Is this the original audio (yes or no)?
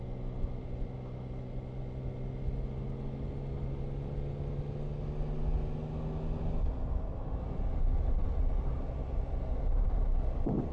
yes